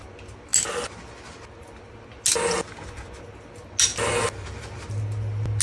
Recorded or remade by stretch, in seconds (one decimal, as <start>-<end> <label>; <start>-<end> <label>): 0.0-5.6 recorded